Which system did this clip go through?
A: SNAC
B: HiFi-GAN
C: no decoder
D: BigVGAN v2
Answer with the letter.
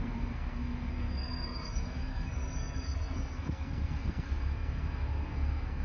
A